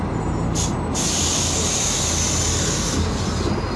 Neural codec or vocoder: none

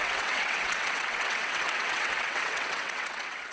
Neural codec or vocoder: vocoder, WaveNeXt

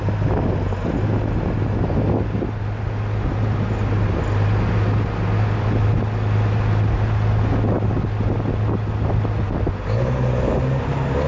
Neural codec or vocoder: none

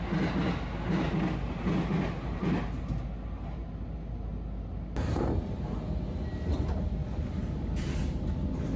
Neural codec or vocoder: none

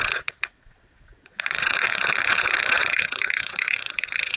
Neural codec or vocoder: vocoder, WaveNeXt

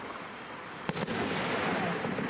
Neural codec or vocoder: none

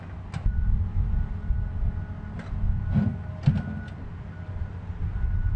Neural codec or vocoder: none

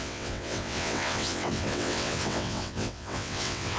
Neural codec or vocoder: vocoder, WaveNeXt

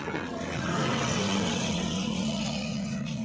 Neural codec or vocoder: vocoder, WaveNeXt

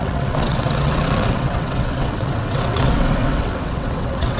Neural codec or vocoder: vocoder, WaveNeXt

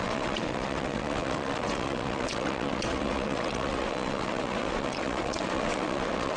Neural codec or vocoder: vocoder, WaveNeXt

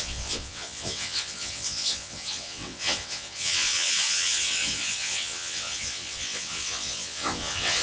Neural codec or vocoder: vocoder, WaveNeXt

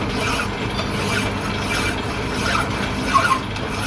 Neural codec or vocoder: none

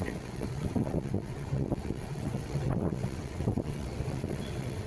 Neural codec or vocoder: vocoder, WaveNeXt